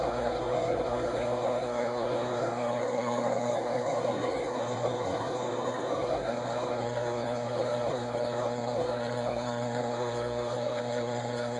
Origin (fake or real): fake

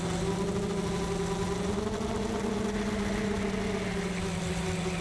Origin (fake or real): real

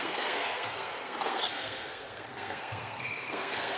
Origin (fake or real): fake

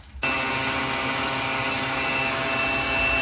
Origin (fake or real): real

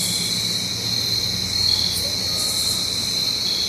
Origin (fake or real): real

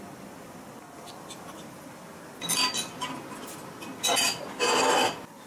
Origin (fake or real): real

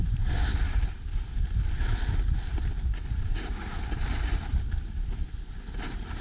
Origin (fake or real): real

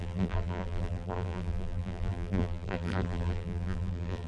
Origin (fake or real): fake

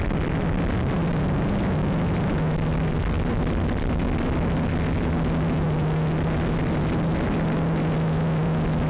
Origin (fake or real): real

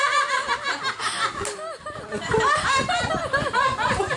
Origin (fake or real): real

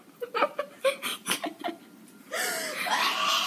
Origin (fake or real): real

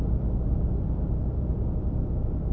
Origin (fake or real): real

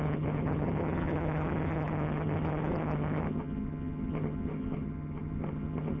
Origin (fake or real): fake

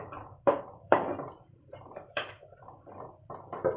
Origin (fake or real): fake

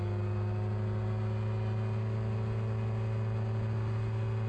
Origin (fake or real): real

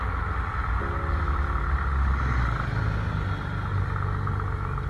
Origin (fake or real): real